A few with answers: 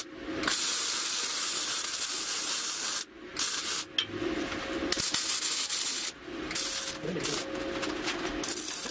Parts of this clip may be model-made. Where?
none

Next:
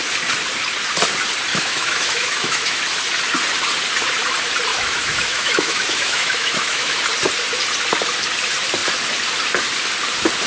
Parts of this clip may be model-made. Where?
1.5-2.8 (autoencoder, DAC-VAE); 4.7-7.0

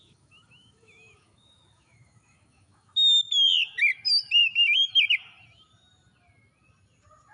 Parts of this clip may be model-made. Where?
0.0-3.0 (autoencoder, DAC-VAE); 4.4-4.9

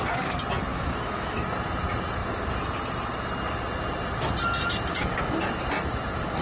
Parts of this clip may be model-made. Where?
0.7-1.4 (autoencoder, DAC-VAE)

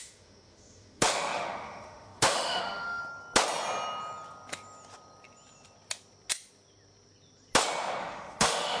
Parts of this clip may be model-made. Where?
0.0-3.0 (autoencoder, DAC-VAE); 8.0-8.8

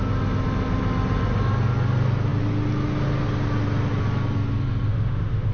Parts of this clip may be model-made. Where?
4.9-5.5 (autoencoder, DAC-VAE)

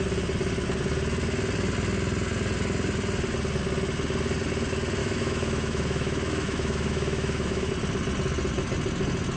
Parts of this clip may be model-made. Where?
5.0-7.7 (autoencoder, DAC-VAE)